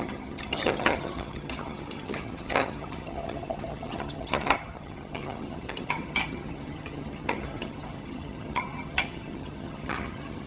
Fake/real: fake